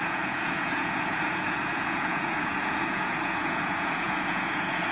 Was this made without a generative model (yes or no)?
no